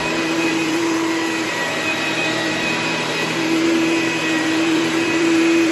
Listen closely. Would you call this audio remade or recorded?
remade